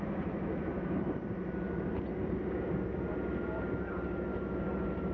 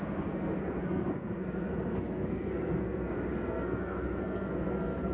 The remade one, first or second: second